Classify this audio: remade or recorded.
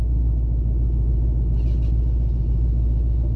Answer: recorded